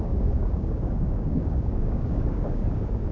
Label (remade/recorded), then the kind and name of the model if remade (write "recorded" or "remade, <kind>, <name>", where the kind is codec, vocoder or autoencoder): remade, codec, DAC